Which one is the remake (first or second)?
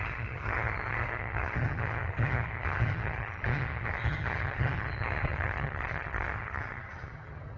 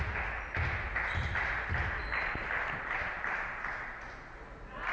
first